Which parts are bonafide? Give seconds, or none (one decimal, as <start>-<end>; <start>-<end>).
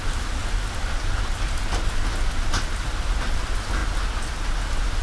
0.0-5.0